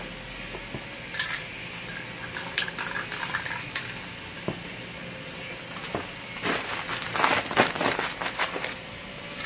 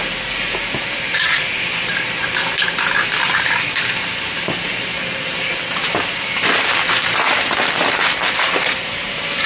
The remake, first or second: second